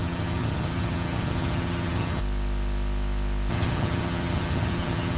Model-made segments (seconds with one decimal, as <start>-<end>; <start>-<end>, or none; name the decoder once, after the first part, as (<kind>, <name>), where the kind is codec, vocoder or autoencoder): 0.0-2.2 (vocoder, HiFi-GAN); 3.5-5.2